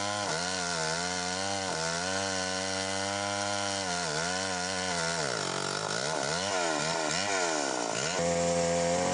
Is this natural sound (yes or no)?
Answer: yes